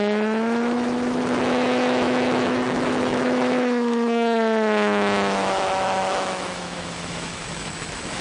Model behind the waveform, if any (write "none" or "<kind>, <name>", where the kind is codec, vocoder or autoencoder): autoencoder, DAC-VAE